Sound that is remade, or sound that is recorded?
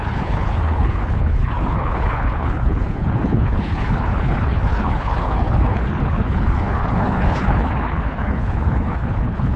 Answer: remade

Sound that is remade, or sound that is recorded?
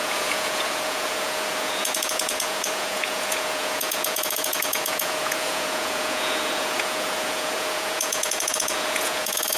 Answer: remade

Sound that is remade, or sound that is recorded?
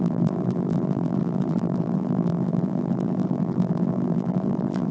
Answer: remade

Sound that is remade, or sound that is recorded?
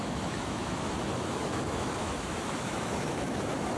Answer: remade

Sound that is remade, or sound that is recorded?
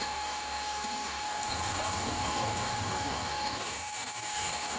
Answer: remade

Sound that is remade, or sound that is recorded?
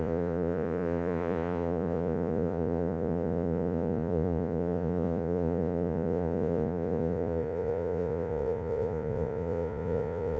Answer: remade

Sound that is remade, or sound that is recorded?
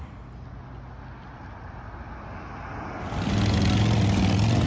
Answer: recorded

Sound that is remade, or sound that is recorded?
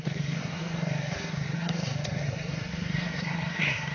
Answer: remade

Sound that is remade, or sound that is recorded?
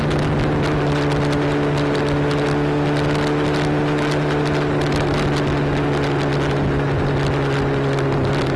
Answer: recorded